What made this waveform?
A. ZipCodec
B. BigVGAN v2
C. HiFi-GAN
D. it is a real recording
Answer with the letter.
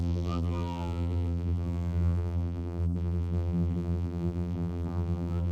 B